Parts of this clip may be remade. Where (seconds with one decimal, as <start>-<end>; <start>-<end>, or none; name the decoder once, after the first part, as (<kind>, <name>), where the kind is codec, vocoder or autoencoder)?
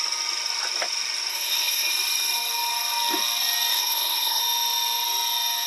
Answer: 1.3-1.9 (codec, SNAC); 3.7-4.4